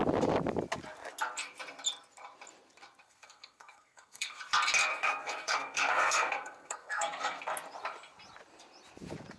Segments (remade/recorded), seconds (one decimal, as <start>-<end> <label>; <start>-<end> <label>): 0.0-3.0 recorded; 3.0-4.4 remade; 4.4-4.9 recorded; 4.9-7.4 remade; 7.4-9.4 recorded